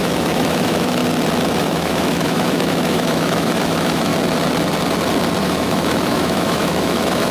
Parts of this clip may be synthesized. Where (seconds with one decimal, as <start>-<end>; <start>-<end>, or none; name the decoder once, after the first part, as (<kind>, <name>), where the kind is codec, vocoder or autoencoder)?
0.0-1.0 (autoencoder, DAC-VAE); 1.6-4.1; 5.4-7.3